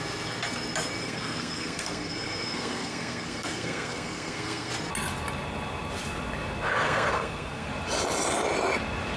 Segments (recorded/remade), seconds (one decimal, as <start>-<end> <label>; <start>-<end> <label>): 0.0-1.0 recorded; 1.0-4.7 remade; 4.7-6.7 recorded; 6.7-7.7 remade; 7.7-9.2 recorded